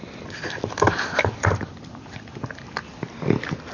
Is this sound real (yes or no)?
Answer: yes